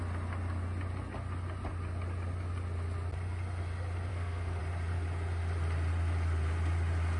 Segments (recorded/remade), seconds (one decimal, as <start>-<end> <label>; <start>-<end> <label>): 0.0-4.1 recorded; 4.1-4.6 remade; 4.6-7.2 recorded